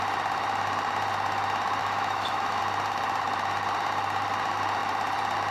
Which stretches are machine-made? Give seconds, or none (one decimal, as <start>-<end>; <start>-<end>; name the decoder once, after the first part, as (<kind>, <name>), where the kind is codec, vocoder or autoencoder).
1.8-2.6 (autoencoder, DAC-VAE)